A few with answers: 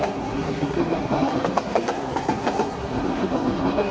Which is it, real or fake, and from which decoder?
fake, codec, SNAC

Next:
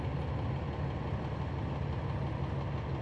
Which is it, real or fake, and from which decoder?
real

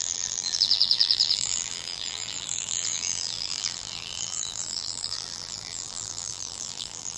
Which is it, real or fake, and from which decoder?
fake, vocoder, BigVGAN v2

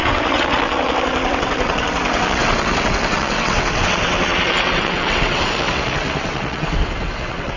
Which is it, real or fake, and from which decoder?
fake, vocoder, WaveNeXt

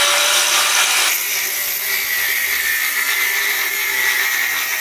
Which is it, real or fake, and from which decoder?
real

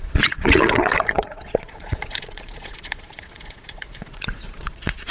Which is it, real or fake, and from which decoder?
fake, vocoder, Vocos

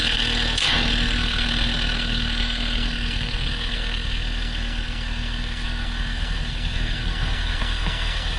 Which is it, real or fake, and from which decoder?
fake, codec, SNAC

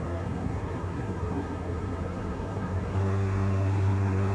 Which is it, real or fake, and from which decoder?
fake, codec, SNAC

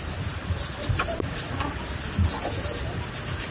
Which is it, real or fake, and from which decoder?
real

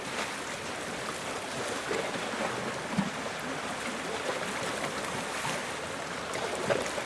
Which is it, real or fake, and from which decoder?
real